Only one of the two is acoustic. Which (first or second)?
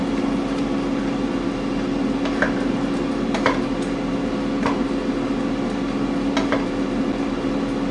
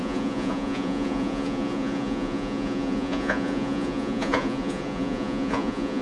first